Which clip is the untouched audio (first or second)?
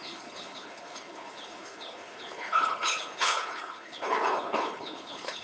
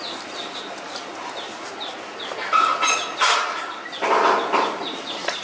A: second